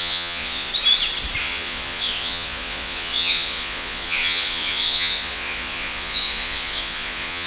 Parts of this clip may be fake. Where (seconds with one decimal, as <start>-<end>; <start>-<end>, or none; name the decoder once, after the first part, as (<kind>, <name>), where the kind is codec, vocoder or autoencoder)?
0.0-0.7 (vocoder, Vocos); 1.4-7.5

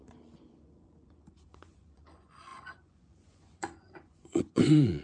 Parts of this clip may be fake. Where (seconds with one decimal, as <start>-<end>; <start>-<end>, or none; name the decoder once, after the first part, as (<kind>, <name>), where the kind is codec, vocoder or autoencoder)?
0.0-5.0 (vocoder, Vocos)

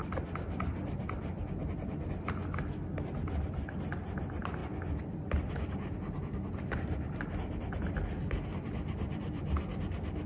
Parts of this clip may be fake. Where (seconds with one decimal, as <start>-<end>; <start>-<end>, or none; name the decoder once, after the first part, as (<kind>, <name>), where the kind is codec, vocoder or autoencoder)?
none

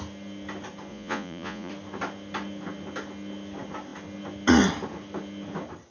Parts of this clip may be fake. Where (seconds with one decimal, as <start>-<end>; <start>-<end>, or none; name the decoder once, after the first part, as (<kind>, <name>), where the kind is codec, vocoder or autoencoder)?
0.9-1.7 (vocoder, Vocos)

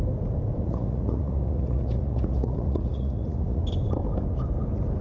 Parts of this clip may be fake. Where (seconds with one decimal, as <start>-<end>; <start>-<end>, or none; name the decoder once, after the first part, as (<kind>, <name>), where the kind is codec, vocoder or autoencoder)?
0.6-3.6 (vocoder, Vocos)

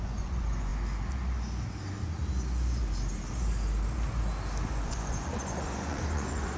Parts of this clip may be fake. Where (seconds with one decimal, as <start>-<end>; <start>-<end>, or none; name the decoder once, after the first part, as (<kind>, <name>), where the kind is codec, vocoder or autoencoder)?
0.0-0.7 (vocoder, Vocos); 4.7-6.6

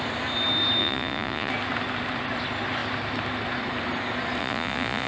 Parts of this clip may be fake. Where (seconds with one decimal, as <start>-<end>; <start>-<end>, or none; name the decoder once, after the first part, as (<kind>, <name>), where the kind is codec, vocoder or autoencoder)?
0.8-1.5 (vocoder, Vocos); 4.4-5.1